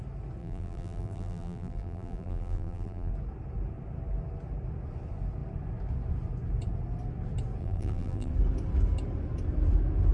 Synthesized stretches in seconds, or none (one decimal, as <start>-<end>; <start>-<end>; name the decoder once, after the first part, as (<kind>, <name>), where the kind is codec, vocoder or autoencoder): 0.4-3.1 (vocoder, BigVGAN v2); 7.6-8.3